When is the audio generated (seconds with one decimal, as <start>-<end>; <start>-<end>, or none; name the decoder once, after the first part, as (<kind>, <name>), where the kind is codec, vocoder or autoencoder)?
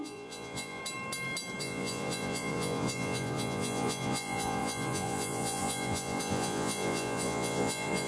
0.0-0.8 (vocoder, Vocos); 1.6-8.1